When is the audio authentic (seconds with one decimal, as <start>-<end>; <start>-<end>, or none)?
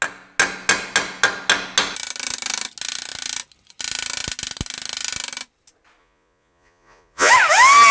0.0-6.0; 7.3-7.9